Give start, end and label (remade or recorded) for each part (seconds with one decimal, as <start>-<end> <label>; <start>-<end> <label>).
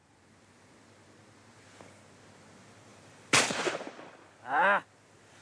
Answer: 0.0-2.9 recorded; 2.9-4.3 remade; 4.3-5.4 recorded